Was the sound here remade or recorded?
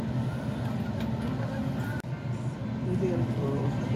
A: recorded